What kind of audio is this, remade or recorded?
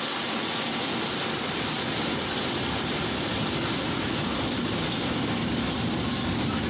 recorded